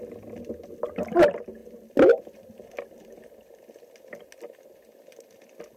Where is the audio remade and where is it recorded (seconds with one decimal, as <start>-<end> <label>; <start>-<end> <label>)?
0.0-5.8 recorded